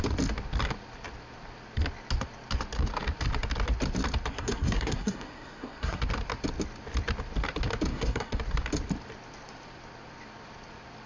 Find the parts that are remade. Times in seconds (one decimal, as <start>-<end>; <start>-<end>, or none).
4.3-6.0; 7.9-8.4

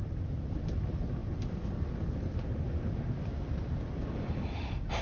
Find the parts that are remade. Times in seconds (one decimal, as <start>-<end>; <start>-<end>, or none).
none